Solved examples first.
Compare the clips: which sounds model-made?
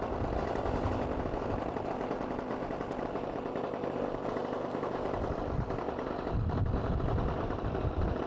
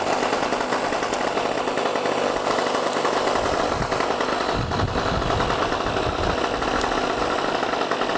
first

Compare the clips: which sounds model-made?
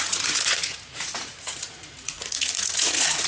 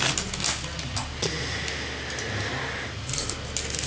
first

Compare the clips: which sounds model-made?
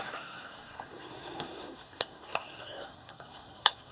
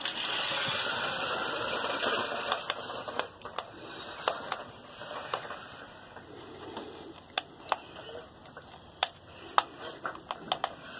first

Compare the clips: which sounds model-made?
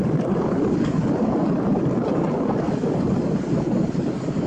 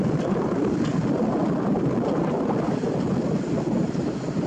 first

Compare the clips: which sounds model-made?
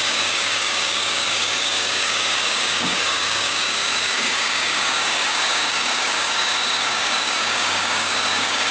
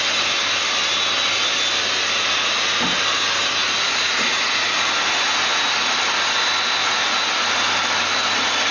first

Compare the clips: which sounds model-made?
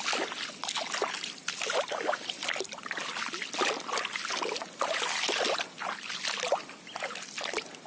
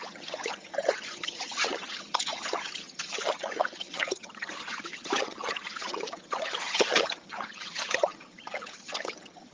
second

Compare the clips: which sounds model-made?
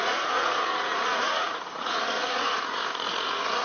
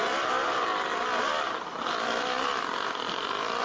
first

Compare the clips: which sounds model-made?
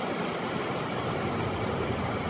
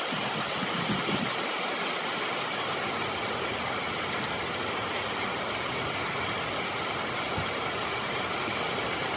first